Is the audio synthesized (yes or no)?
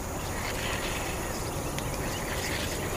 no